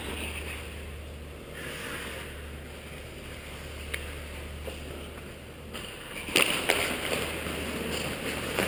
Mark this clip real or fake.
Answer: real